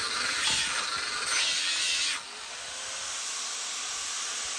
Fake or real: real